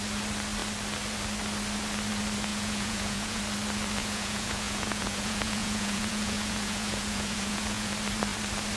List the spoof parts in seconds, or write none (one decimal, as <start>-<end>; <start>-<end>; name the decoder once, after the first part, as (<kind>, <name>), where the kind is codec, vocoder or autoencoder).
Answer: 2.5-3.4 (vocoder, Vocos); 4.0-7.9